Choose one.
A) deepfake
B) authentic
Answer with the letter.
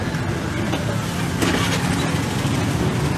B